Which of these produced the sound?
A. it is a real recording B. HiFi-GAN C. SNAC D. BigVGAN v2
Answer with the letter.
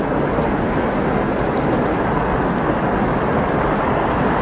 A